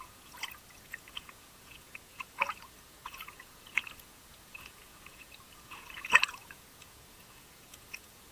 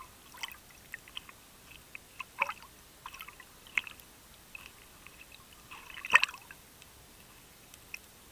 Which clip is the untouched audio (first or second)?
second